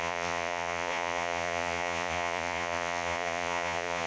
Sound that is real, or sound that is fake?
fake